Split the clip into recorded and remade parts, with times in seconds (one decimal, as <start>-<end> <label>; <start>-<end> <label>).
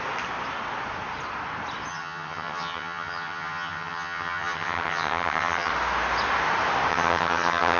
0.0-1.9 recorded; 1.9-5.7 remade; 5.7-6.9 recorded; 6.9-7.8 remade